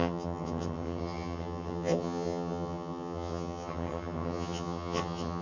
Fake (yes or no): yes